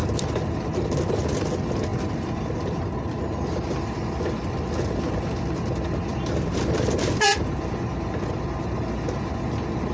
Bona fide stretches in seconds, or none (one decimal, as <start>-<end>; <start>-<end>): 0.0-6.1; 6.6-9.9